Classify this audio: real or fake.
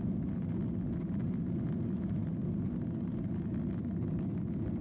real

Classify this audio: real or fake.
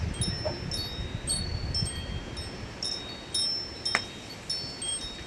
real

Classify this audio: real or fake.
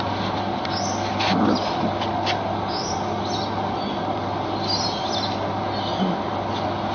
real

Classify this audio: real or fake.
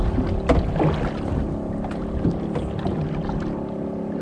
real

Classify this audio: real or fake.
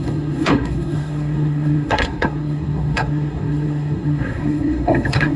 fake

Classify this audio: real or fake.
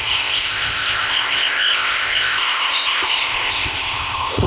fake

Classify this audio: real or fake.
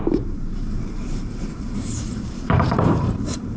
fake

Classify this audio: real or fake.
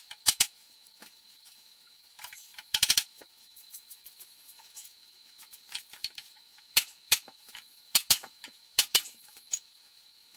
fake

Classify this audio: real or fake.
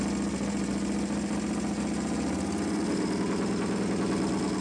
real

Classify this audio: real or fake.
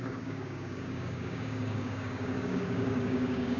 fake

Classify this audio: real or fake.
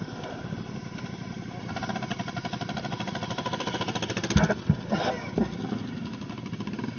real